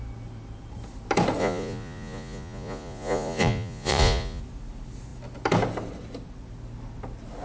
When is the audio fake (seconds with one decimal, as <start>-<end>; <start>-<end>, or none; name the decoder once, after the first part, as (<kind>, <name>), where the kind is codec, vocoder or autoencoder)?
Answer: 1.4-4.4 (vocoder, Vocos)